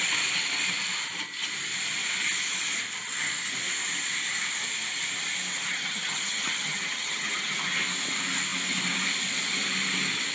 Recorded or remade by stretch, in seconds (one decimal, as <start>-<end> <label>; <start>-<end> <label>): 0.0-5.7 recorded; 5.7-7.8 remade; 7.8-10.3 recorded